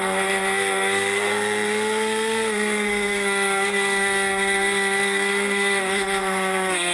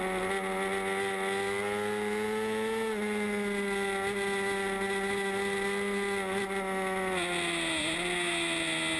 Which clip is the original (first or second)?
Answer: second